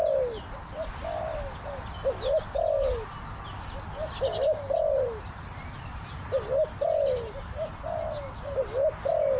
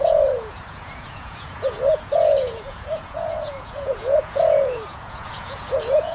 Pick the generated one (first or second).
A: second